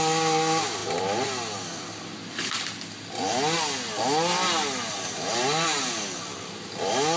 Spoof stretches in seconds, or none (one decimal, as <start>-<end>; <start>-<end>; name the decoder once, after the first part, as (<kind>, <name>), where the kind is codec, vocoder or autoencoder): none